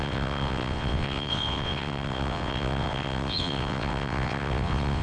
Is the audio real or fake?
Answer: fake